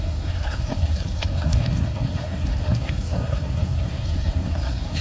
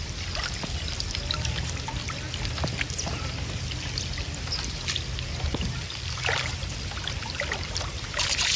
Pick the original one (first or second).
second